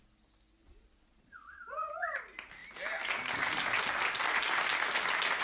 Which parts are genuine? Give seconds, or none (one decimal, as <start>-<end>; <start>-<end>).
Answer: 0.0-0.6; 2.2-5.4